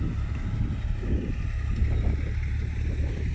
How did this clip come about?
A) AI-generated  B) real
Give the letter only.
B